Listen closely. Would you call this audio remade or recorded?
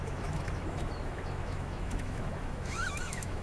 remade